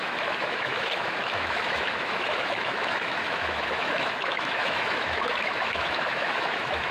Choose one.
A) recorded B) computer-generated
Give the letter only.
B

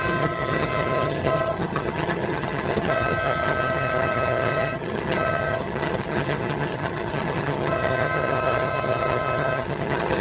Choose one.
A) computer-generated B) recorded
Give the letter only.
A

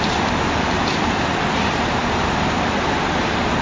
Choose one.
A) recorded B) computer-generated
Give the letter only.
A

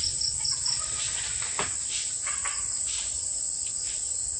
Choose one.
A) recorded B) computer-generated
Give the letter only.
A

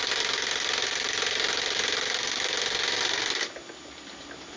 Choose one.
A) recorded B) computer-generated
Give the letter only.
A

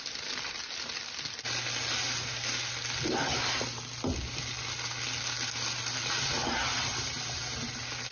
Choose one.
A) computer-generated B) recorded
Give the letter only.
B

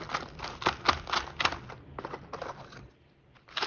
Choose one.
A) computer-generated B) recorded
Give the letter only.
B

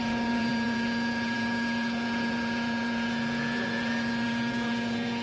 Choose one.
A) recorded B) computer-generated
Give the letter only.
B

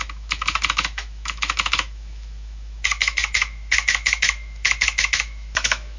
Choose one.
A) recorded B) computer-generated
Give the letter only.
B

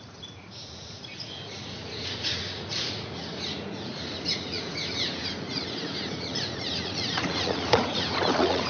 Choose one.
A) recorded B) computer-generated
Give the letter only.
B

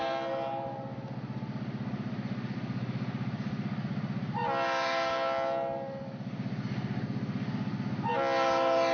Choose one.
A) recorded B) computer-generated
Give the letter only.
A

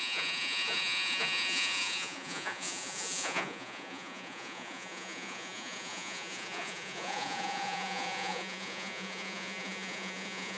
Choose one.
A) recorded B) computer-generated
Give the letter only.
B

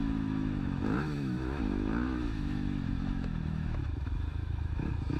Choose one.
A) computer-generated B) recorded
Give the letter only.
A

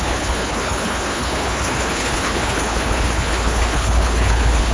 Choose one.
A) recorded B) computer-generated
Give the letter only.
B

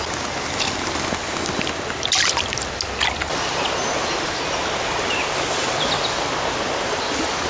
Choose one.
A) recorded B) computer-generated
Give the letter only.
A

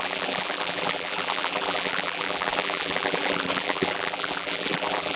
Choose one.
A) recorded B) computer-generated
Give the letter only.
B